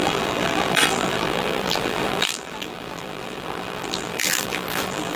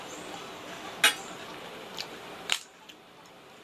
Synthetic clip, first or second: first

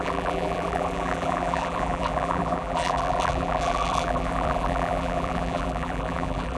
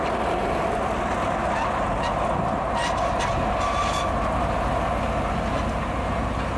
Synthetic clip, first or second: first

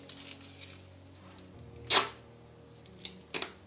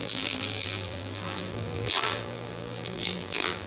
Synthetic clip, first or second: second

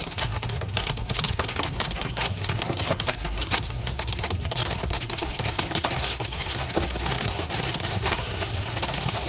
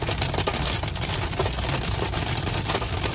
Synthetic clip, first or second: first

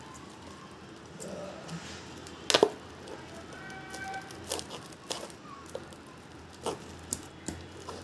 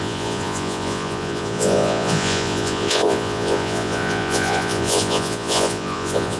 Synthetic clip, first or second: second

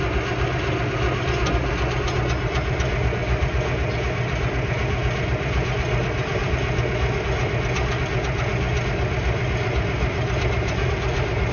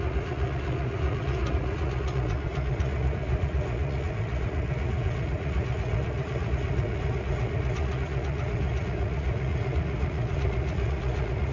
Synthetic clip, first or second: second